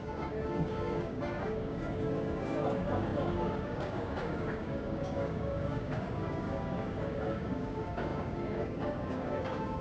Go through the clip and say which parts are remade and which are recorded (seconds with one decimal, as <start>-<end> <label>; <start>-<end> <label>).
0.0-9.8 remade